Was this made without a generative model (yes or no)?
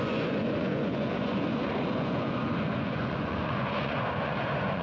no